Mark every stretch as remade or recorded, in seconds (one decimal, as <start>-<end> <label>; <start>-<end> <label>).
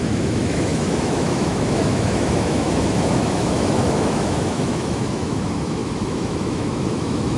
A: 0.0-7.4 remade